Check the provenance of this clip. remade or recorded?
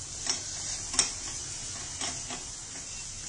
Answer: recorded